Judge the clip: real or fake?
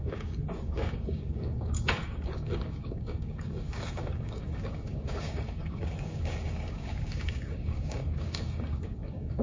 fake